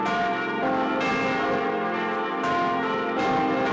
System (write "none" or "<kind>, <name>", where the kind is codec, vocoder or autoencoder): none